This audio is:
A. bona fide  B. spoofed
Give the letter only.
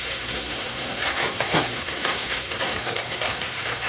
B